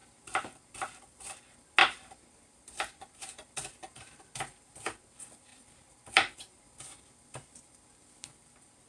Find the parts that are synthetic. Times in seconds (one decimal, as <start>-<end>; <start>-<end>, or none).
0.0-0.9; 1.8-4.3; 5.5-6.6